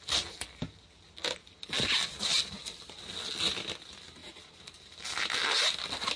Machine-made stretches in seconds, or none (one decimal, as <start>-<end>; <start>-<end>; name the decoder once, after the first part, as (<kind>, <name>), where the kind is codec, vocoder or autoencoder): none